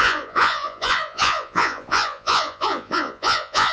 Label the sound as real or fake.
fake